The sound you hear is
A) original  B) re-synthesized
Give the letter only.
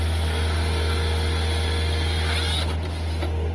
A